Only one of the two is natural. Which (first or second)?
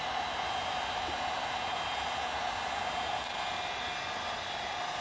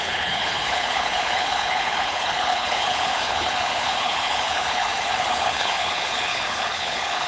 first